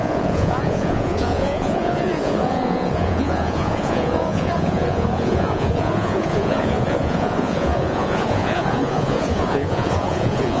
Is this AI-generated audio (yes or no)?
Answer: yes